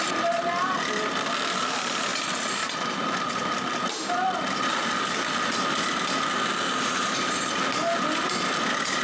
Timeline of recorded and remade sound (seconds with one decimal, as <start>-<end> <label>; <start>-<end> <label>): 0.0-2.1 recorded; 2.1-5.3 remade; 5.3-9.0 recorded